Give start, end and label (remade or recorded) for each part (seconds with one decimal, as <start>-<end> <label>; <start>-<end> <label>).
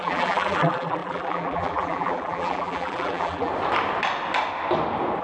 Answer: 0.0-3.5 remade; 3.5-5.2 recorded